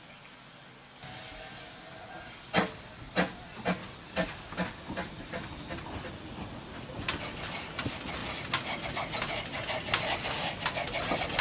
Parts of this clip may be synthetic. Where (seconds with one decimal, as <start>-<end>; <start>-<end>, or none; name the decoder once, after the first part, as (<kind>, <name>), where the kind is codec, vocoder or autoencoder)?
none